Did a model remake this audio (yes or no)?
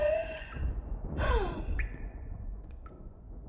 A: yes